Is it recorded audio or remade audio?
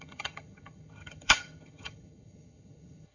remade